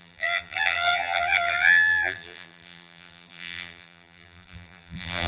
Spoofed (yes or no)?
yes